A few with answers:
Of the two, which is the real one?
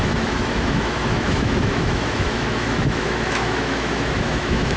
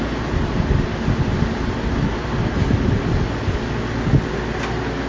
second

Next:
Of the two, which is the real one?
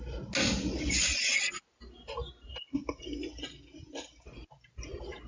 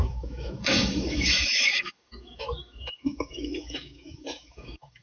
first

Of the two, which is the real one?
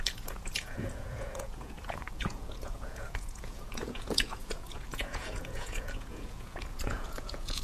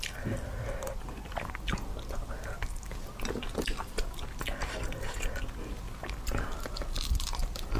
second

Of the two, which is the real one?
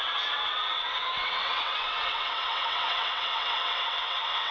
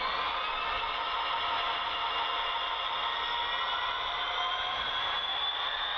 second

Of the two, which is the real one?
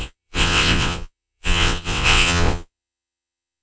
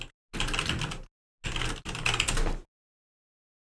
second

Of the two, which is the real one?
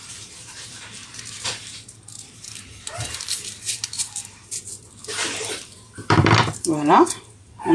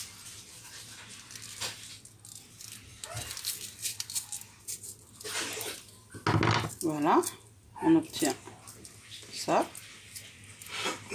second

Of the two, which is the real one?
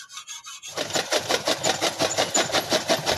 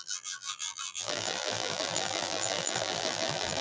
first